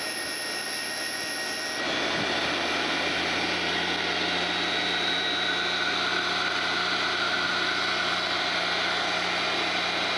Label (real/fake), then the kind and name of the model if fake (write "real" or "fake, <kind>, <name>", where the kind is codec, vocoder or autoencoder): real